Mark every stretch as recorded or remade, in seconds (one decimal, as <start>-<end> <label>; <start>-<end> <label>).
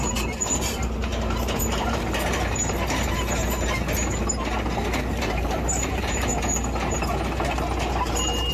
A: 0.0-3.4 remade; 3.4-5.2 recorded; 5.2-6.3 remade; 6.3-8.5 recorded